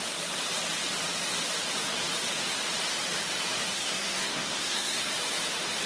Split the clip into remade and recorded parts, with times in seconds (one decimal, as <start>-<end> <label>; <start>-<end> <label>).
0.0-3.7 recorded; 3.7-5.1 remade; 5.1-5.9 recorded